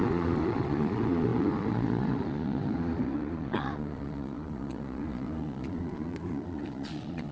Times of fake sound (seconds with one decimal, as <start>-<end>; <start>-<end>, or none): 0.0-7.3